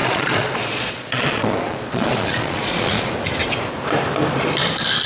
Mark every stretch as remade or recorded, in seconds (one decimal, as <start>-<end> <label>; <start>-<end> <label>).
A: 0.0-3.1 remade; 3.1-5.1 recorded